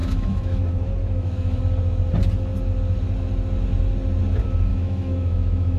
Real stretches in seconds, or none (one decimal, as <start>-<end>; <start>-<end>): 0.6-1.0; 1.6-4.7